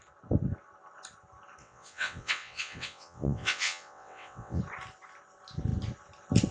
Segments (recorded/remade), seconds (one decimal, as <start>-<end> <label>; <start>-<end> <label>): 0.0-1.6 recorded; 1.6-4.6 remade; 4.6-6.5 recorded